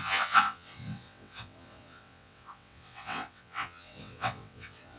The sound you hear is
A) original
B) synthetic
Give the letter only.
B